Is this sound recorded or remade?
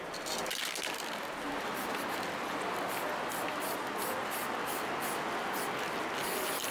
recorded